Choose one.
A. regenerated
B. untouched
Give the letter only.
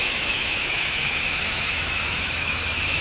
A